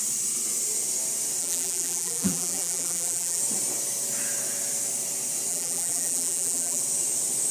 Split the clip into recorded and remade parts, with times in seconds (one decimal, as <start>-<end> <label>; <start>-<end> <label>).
0.0-1.4 recorded; 1.4-3.4 remade; 3.4-5.5 recorded; 5.5-6.8 remade; 6.8-7.5 recorded